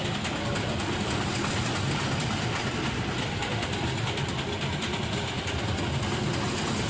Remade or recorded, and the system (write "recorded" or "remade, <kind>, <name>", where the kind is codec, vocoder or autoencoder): recorded